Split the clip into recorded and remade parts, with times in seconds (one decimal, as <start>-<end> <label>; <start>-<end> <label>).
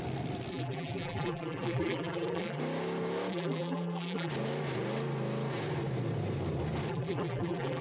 0.0-0.5 recorded; 0.5-2.6 remade; 2.6-3.3 recorded; 3.3-4.3 remade; 4.3-6.9 recorded; 6.9-7.8 remade